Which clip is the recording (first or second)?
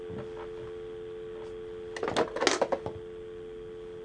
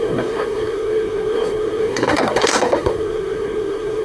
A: first